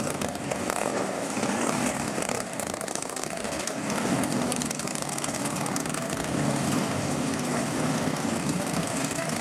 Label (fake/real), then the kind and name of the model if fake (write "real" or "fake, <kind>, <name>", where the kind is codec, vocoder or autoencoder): fake, codec, DAC